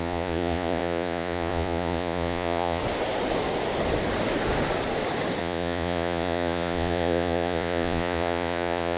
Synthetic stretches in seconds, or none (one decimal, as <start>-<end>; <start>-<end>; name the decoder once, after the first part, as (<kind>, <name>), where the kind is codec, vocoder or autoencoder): 0.0-2.8 (vocoder, Vocos); 5.4-9.0